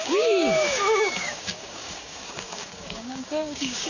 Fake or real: fake